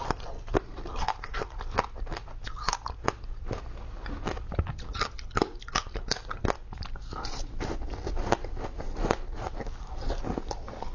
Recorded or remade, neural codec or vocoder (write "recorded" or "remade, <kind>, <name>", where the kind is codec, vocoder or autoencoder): recorded